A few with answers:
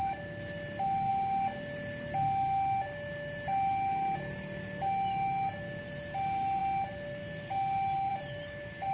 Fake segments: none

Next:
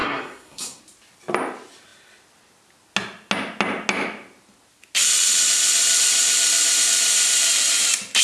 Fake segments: 0.0-0.8 (codec, SNAC)